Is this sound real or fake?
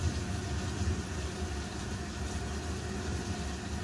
real